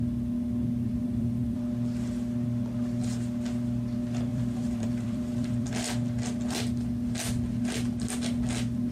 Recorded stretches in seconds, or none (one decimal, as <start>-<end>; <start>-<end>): 0.0-1.0; 1.6-4.3; 5.7-8.9